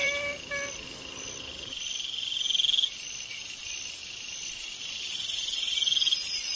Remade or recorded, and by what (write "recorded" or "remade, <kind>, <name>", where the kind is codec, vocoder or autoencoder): recorded